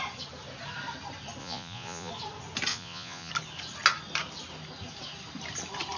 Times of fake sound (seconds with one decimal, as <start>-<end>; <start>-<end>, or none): 1.4-2.1; 2.7-3.3